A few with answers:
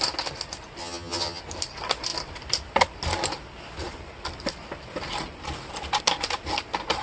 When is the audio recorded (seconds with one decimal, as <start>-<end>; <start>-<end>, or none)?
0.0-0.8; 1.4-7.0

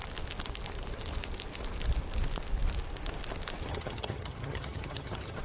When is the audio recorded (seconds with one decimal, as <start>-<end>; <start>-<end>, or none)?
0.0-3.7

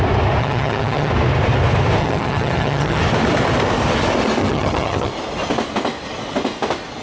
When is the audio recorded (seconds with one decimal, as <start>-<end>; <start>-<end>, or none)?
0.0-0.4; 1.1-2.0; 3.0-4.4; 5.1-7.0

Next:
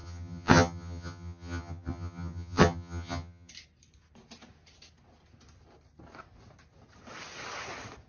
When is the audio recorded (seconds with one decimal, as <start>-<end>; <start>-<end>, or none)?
3.5-8.1

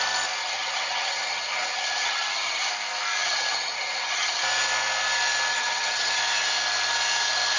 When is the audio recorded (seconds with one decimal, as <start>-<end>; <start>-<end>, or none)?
0.0-0.4; 2.7-3.2; 4.4-5.5; 6.2-7.6

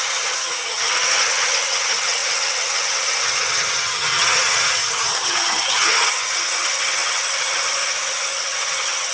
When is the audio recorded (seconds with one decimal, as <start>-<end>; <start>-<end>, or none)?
none

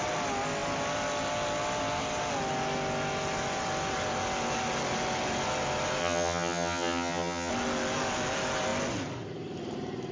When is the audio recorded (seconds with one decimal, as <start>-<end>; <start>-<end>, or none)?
0.0-6.0; 7.5-10.1

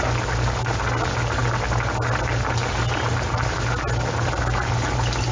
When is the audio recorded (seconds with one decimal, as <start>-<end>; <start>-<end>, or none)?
0.0-5.3